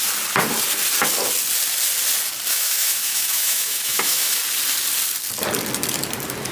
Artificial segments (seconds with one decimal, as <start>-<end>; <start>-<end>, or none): 2.5-4.4